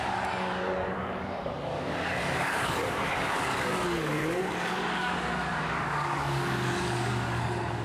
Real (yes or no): no